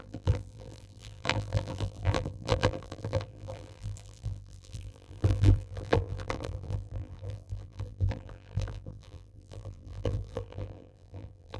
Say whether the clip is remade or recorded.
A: remade